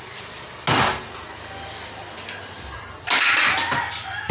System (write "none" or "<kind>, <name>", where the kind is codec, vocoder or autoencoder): none